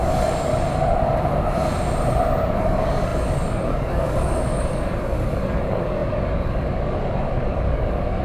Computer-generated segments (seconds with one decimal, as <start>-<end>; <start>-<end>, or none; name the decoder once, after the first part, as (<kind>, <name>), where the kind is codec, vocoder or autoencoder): 0.0-0.5 (codec, DAC); 2.6-8.2